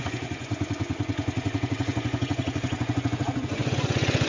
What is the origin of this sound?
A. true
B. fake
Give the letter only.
B